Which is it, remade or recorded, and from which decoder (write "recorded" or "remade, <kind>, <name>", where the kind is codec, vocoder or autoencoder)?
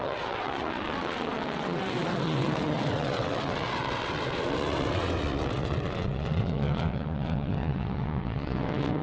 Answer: remade, vocoder, WaveNeXt